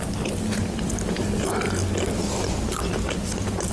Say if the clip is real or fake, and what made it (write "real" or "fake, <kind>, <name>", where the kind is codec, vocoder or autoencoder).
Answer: real